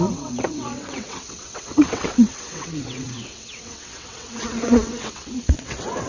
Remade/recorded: remade